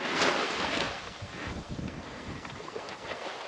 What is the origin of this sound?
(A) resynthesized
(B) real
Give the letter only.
A